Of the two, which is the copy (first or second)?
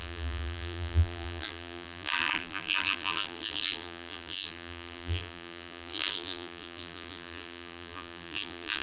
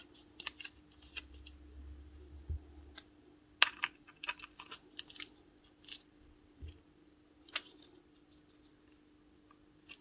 first